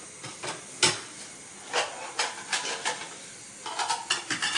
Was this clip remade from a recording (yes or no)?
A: no